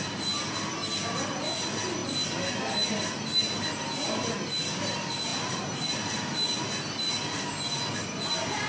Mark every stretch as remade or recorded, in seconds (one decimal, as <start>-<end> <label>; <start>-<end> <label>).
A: 0.0-8.7 recorded